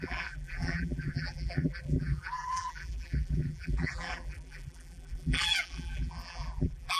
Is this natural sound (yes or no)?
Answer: no